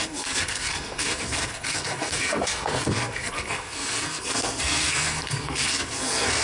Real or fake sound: fake